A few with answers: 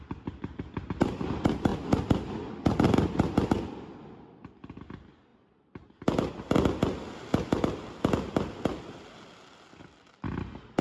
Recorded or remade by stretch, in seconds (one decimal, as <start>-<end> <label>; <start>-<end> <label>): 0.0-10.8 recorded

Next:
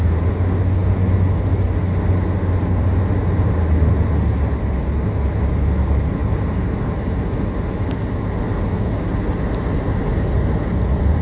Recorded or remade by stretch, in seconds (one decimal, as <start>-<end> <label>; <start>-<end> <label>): 0.0-11.2 recorded

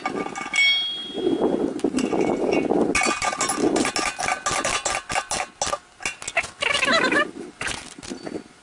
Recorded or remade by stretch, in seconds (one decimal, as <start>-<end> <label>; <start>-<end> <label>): 0.0-8.6 recorded

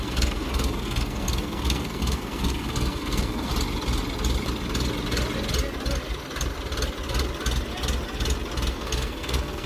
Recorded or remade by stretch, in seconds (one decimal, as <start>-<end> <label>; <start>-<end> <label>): 0.0-3.5 remade; 3.5-8.7 recorded; 8.7-9.7 remade

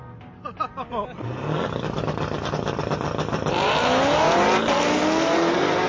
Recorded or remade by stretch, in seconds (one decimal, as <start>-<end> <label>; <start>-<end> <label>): 0.0-0.7 recorded; 0.7-4.2 remade; 4.2-5.9 recorded

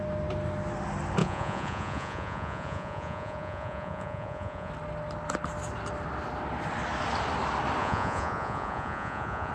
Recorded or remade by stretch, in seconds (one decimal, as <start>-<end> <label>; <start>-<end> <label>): 0.0-1.2 recorded; 1.2-4.7 remade; 4.7-7.8 recorded; 7.8-9.5 remade

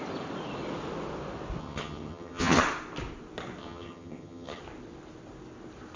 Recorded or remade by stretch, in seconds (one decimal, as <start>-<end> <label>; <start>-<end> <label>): 0.0-1.6 recorded; 1.6-2.6 remade; 2.6-3.6 recorded; 3.6-4.6 remade; 4.6-6.0 recorded